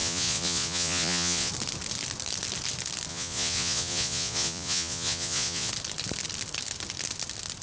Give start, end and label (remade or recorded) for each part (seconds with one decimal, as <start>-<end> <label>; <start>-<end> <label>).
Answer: 0.0-1.5 remade; 1.5-3.1 recorded; 3.1-5.7 remade; 5.7-7.6 recorded